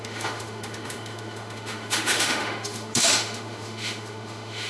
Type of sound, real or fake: fake